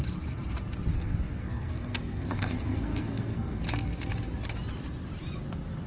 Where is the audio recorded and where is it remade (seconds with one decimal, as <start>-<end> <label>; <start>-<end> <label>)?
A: 0.0-0.9 recorded; 0.9-3.6 remade; 3.6-5.9 recorded